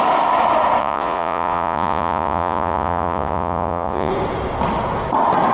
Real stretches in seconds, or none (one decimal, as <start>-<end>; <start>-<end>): 0.0-0.8; 4.1-5.5

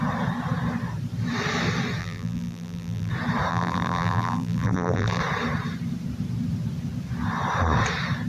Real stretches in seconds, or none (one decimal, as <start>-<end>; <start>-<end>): 0.0-2.0; 3.1-3.5; 5.2-8.3

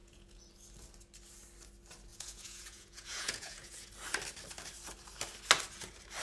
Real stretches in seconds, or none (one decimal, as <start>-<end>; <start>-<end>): 0.5-2.1; 3.9-6.2

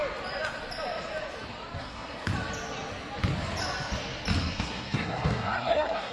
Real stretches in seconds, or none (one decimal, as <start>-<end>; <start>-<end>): 0.0-1.8; 2.3-4.4

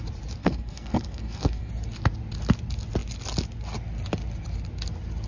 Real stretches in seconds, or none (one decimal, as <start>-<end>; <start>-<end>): 0.0-0.4; 1.7-5.3

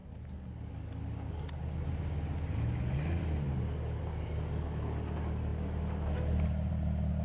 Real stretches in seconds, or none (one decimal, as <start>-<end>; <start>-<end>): 1.9-4.1; 4.8-7.2

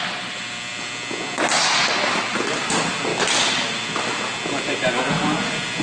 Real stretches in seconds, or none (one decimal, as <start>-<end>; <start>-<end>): 0.0-5.8

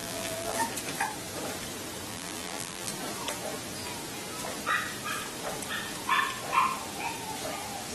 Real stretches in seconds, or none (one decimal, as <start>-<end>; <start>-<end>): 0.6-2.1; 2.9-7.9